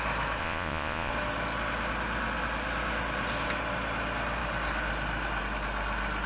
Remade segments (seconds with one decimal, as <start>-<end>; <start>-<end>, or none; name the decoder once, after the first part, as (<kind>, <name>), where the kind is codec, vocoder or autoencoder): 0.4-1.1 (vocoder, Vocos)